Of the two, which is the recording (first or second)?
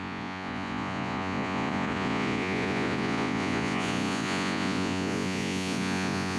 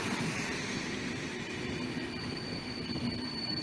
second